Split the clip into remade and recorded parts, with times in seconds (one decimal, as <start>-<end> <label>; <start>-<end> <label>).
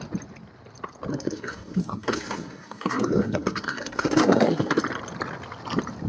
0.0-1.1 recorded; 1.1-4.8 remade; 4.8-6.1 recorded